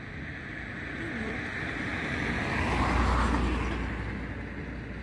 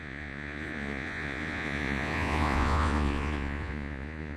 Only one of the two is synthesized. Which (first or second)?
second